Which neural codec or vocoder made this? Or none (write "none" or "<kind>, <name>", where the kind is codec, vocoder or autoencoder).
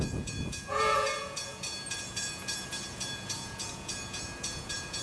vocoder, Vocos